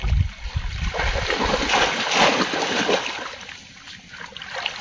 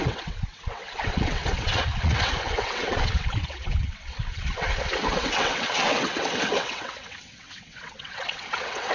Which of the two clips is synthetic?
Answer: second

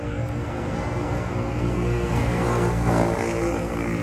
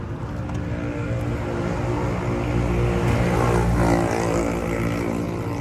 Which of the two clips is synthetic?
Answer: first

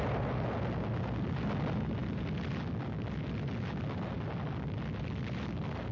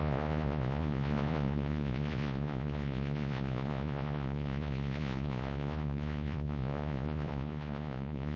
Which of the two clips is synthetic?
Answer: second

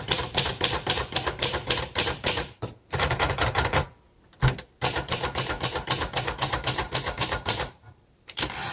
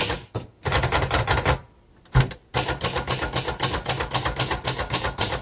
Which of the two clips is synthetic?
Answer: first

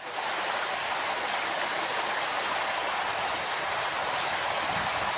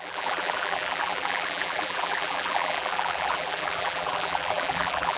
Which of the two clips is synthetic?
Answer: second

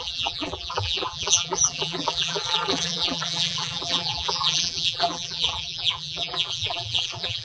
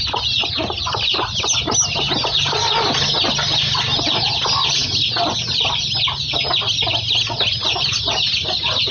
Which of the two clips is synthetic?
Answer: first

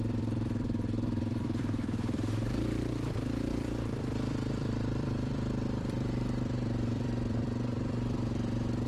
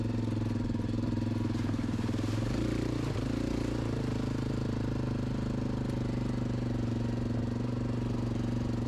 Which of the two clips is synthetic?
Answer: first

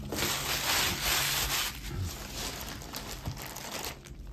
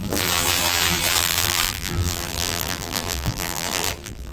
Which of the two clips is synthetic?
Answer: second